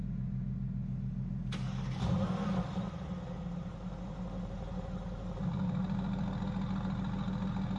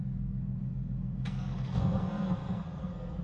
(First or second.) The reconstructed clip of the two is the second